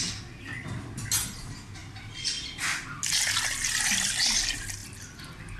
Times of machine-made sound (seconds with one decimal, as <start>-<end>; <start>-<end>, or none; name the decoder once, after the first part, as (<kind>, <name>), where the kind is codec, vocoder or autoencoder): 1.8-3.0 (vocoder, BigVGAN v2); 4.8-5.6

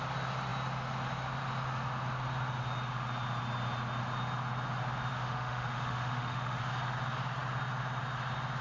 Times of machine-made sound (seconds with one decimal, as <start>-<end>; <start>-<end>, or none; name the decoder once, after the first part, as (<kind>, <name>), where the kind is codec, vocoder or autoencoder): 5.1-6.6 (autoencoder, DAC-VAE)

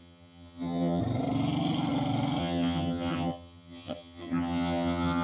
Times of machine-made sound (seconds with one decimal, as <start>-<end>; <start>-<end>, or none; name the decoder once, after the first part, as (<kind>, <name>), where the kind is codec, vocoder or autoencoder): 0.0-1.0 (vocoder, HiFi-GAN); 2.4-5.2